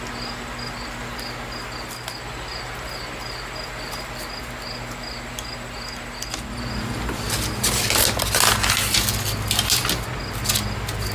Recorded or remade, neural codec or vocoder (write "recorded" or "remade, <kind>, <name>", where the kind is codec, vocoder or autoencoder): recorded